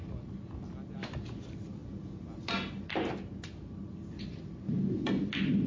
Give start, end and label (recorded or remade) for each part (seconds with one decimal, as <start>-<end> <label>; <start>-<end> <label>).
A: 0.0-5.7 recorded